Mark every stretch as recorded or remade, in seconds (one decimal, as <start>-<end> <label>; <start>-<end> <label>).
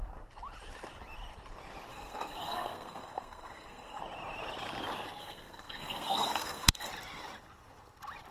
0.0-1.9 recorded; 1.9-4.0 remade; 4.0-5.2 recorded; 5.2-6.9 remade; 6.9-8.3 recorded